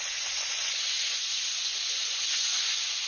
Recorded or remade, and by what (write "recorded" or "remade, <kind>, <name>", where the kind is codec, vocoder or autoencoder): remade, vocoder, Vocos